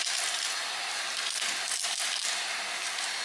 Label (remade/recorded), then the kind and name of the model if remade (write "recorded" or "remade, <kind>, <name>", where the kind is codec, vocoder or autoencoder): recorded